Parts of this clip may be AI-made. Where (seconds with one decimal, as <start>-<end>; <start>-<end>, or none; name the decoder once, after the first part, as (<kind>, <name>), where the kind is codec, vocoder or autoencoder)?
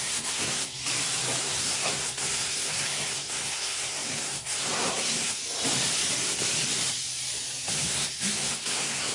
0.0-0.8 (codec, SNAC); 1.4-5.4; 7.7-9.1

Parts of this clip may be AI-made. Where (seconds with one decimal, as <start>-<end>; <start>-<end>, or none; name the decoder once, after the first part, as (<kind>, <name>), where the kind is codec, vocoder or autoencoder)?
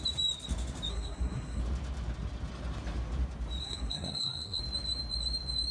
0.9-1.6 (codec, SNAC); 3.6-4.6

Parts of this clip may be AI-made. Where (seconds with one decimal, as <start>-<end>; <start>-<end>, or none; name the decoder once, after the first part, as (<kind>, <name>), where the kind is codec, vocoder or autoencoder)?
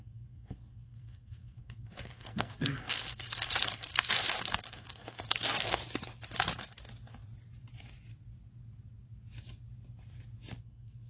0.0-5.8 (codec, SNAC); 10.6-11.1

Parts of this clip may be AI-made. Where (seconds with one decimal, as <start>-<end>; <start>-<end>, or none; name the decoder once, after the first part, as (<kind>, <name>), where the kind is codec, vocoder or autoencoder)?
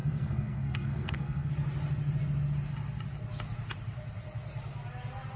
0.0-1.5 (codec, SNAC)